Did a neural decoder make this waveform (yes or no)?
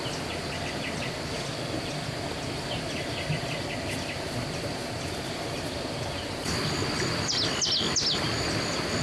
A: no